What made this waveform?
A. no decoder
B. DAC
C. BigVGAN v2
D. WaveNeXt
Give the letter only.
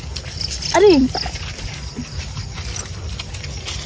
A